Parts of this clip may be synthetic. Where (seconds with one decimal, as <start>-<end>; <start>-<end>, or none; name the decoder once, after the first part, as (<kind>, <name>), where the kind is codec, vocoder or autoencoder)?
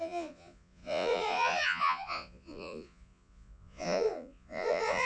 0.0-5.1 (vocoder, Vocos)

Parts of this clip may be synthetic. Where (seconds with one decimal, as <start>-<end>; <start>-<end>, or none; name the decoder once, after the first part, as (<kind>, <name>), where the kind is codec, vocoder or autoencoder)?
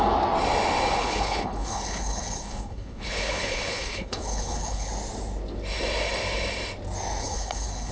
1.0-4.9 (codec, HILCodec); 7.2-7.9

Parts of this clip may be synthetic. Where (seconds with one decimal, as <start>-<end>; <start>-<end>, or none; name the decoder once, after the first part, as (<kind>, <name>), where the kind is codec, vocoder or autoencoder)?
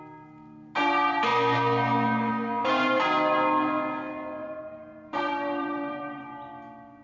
4.4-6.2 (vocoder, BigVGAN v2)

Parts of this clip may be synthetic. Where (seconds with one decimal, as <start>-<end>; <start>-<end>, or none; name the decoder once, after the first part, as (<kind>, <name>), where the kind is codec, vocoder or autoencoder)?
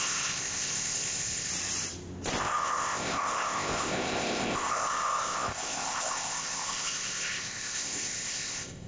0.0-1.5 (codec, ZipCodec); 2.4-8.9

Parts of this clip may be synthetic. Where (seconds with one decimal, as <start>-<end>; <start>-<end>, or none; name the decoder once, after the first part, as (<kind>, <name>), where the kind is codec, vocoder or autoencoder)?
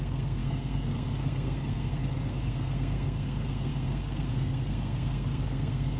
0.0-6.0 (codec, SNAC)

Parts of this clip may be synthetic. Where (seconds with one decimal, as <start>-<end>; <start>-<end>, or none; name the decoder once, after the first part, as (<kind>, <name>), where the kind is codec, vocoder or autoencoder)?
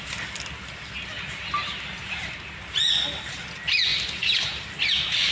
1.6-2.5 (vocoder, BigVGAN v2); 3.9-4.7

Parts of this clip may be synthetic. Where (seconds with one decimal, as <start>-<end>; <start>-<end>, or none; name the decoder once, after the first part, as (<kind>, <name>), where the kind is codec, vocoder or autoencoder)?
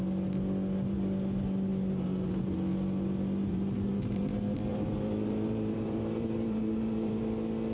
3.4-4.2 (vocoder, BigVGAN v2); 4.7-7.2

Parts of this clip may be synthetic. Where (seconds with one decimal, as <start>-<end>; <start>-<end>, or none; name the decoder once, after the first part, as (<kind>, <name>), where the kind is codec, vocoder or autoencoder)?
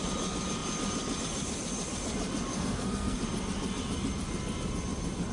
2.5-3.2 (codec, SNAC)